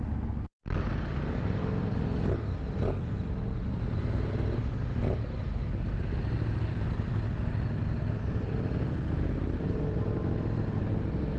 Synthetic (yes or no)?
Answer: no